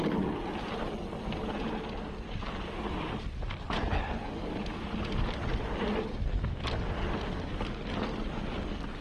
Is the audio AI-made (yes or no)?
no